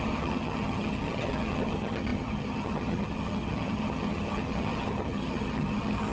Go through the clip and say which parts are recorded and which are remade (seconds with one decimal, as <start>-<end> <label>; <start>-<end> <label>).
0.0-6.1 remade